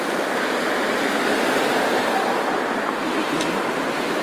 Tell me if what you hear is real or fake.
real